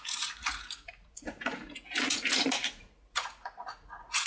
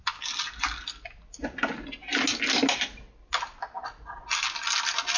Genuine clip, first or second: second